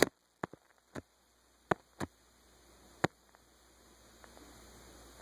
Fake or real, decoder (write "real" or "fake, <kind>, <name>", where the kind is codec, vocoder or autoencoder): real